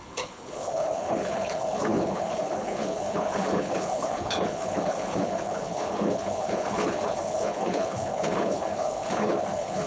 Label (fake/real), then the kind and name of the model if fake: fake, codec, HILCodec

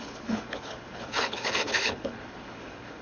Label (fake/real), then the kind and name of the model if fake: fake, codec, HILCodec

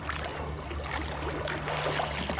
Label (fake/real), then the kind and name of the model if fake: real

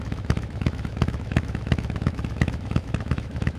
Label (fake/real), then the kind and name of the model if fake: fake, autoencoder, DAC-VAE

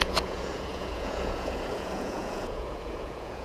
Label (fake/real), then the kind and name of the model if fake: fake, vocoder, Vocos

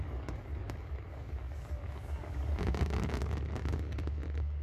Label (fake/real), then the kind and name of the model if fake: fake, codec, DAC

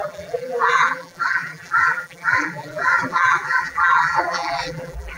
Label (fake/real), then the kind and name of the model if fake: fake, vocoder, BigVGAN v2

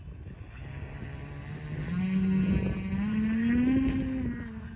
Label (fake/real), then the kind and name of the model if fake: real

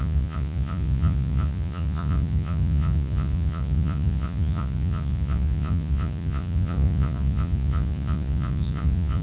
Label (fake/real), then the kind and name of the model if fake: fake, vocoder, Vocos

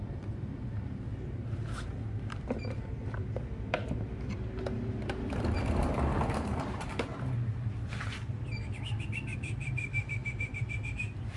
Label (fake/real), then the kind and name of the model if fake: fake, vocoder, BigVGAN v2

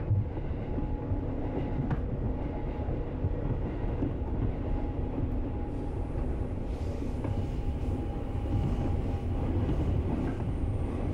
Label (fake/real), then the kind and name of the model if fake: real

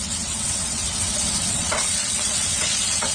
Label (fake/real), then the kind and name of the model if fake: fake, vocoder, WaveNeXt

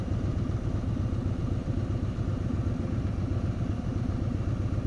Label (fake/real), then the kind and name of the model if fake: real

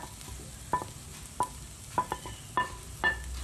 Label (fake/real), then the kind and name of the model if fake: real